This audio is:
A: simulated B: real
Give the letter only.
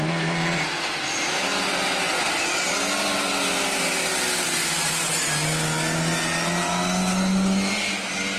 B